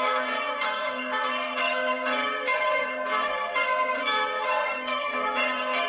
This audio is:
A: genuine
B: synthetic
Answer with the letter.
B